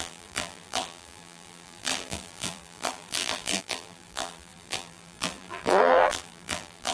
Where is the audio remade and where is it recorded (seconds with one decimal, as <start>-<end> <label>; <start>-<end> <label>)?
0.0-6.9 remade